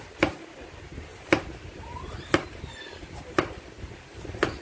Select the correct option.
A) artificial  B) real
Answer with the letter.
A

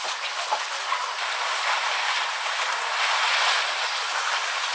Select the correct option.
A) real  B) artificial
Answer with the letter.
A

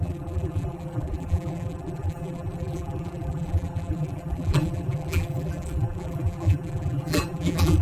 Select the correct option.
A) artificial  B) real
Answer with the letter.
A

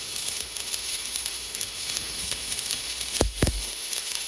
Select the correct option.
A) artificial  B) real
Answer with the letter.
A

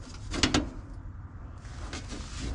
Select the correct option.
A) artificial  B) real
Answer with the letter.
B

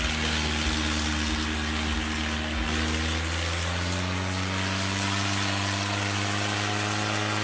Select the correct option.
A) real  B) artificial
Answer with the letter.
A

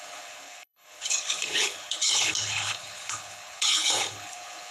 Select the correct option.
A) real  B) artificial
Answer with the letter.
B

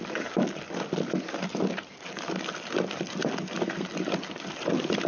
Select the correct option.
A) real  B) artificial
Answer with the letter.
A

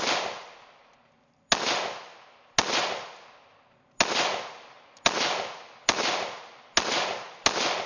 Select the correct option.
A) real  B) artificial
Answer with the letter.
A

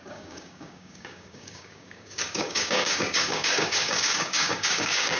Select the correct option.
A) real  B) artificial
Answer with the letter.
B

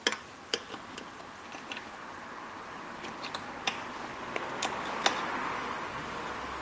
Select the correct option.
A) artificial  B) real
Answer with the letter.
B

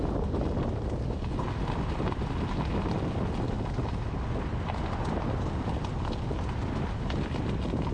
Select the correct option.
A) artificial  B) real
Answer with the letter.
B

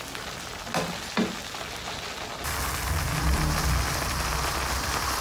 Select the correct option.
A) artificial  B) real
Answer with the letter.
B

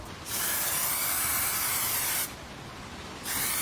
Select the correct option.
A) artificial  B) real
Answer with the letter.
B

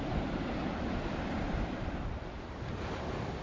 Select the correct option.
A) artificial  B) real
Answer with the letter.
B